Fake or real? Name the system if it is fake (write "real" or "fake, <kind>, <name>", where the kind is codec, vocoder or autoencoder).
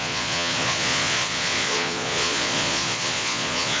fake, vocoder, Vocos